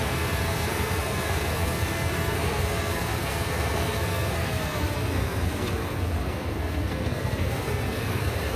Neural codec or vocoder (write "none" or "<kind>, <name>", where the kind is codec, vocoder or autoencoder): codec, SNAC